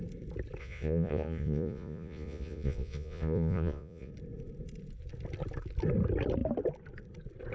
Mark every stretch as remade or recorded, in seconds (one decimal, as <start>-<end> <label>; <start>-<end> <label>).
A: 0.0-0.6 recorded; 0.6-4.1 remade; 4.1-7.5 recorded